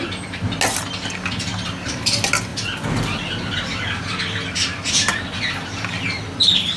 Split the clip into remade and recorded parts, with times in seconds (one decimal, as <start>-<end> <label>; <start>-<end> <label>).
0.0-6.8 recorded